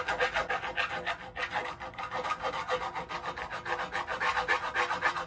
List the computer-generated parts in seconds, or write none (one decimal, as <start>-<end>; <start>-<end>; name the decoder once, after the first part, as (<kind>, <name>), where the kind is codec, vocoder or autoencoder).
none